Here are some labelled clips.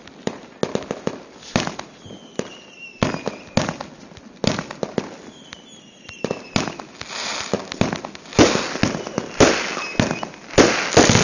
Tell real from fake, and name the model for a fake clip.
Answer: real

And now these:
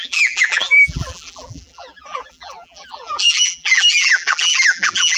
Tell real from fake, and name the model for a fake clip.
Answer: fake, vocoder, BigVGAN v2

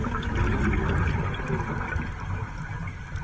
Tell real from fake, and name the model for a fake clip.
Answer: real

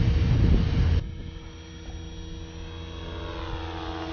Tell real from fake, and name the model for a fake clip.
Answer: real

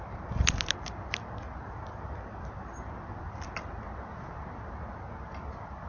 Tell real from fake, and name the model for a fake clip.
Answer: fake, vocoder, BigVGAN v2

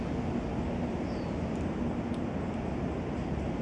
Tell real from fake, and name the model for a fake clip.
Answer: real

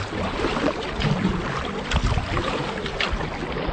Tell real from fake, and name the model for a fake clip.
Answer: real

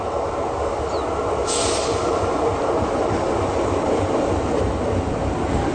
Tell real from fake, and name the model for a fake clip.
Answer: real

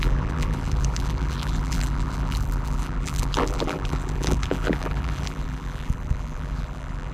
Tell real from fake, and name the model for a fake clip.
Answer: fake, vocoder, BigVGAN v2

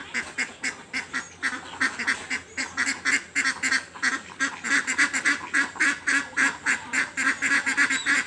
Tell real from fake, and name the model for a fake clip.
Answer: real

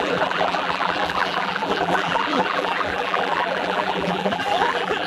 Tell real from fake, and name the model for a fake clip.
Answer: fake, vocoder, BigVGAN v2